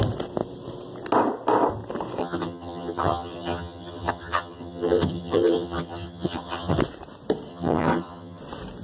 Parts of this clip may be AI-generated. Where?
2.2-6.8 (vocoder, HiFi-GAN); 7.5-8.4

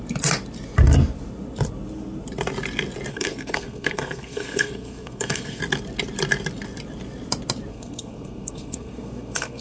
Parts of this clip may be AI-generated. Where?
3.1-5.6 (codec, SNAC); 7.7-9.6

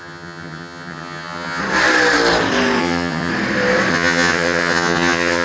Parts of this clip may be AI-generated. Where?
0.0-1.6 (vocoder, HiFi-GAN); 2.8-3.3; 3.9-5.4

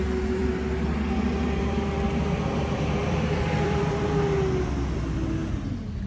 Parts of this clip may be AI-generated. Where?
3.0-4.1 (vocoder, BigVGAN v2)

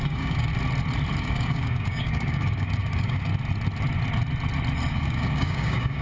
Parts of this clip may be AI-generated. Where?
0.0-0.5 (codec, DAC); 1.2-3.3; 4.9-6.0